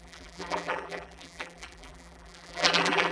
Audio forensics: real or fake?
fake